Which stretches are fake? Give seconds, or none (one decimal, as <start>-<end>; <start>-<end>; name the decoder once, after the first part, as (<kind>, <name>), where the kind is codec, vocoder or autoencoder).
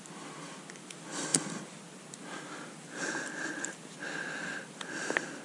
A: none